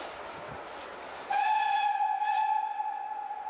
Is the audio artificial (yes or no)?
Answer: no